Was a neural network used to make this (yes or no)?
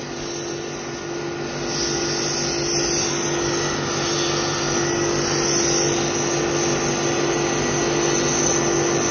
no